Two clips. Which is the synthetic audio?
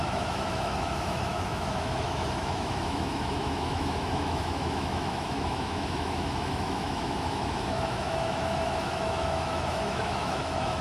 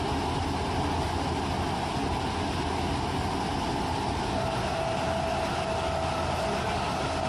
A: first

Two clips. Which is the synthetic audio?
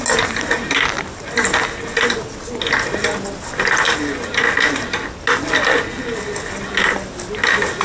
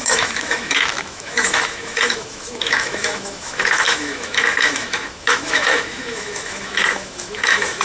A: second